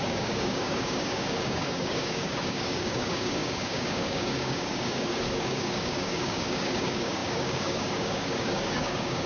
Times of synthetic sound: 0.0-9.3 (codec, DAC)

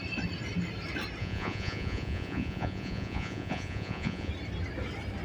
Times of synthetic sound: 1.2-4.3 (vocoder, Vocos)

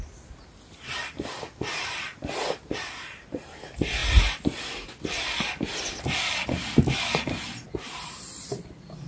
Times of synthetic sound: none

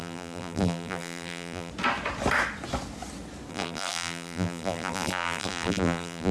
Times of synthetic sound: 0.0-1.7 (vocoder, BigVGAN v2); 3.5-6.3

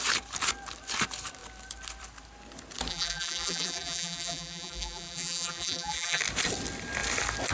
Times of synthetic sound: 2.9-6.2 (vocoder, BigVGAN v2)

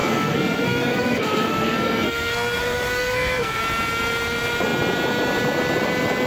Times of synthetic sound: 0.0-3.6 (codec, SNAC)

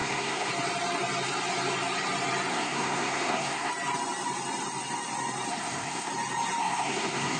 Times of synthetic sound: 0.0-0.5 (codec, SNAC); 2.5-3.7; 5.5-6.1; 6.6-7.4